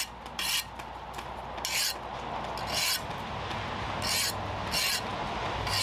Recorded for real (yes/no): yes